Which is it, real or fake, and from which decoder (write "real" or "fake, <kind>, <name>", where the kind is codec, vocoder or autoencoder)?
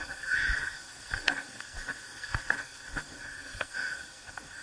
fake, codec, SNAC